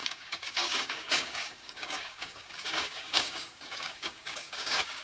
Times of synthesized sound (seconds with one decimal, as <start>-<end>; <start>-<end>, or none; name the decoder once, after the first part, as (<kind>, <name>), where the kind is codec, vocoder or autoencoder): 0.0-5.0 (codec, DAC)